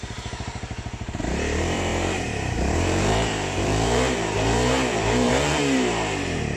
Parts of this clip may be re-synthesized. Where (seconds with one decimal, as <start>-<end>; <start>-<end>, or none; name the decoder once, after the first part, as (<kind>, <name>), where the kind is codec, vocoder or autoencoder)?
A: 0.0-6.6 (vocoder, BigVGAN v2)